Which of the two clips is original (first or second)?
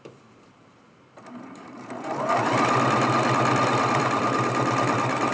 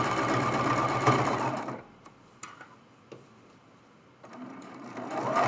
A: second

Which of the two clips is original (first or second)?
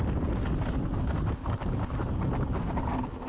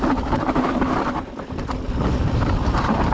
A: first